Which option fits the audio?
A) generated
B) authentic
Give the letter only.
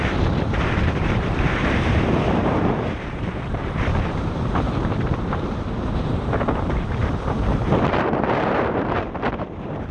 A